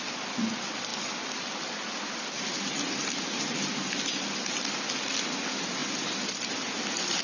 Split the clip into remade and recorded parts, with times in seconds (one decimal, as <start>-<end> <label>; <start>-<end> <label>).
0.0-7.2 recorded